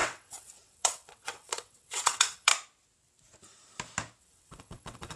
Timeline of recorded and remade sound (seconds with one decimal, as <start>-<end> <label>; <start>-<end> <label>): 0.0-2.5 remade; 2.5-4.2 recorded; 4.2-5.2 remade